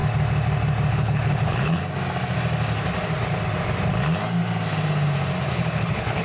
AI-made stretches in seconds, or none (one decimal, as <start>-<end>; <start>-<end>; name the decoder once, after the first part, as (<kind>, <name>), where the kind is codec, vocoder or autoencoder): 0.9-1.8 (codec, HILCodec); 5.5-6.2